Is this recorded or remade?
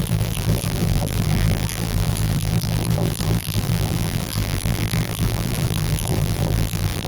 remade